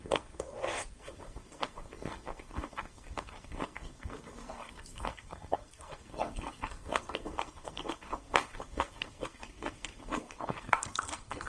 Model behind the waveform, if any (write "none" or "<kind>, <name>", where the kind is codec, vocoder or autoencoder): codec, SNAC